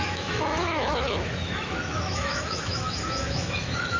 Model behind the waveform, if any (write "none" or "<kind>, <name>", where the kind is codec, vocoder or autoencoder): autoencoder, DAC-VAE